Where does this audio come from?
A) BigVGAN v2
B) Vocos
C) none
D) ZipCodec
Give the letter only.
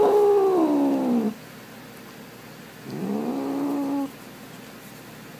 C